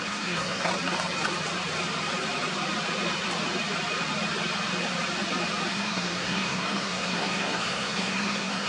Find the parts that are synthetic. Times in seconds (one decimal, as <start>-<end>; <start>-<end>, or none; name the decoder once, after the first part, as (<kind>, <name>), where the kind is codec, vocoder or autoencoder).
0.0-0.7 (codec, SNAC); 5.7-8.7